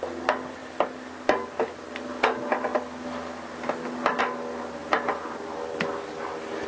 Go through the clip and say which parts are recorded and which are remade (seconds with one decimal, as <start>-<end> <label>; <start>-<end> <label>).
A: 0.0-6.7 recorded